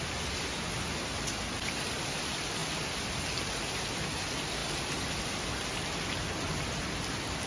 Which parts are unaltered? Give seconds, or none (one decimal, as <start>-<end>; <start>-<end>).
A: 0.0-7.5